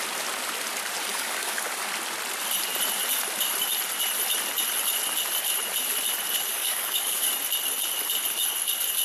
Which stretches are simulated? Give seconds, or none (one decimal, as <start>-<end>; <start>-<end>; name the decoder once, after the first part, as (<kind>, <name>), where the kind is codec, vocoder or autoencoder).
1.1-1.8 (codec, DAC); 6.5-7.3